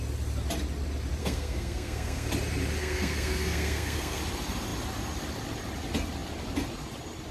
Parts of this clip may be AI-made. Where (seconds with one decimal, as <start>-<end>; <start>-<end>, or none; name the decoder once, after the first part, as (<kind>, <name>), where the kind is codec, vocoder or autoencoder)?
1.2-2.3 (codec, SNAC); 2.8-4.2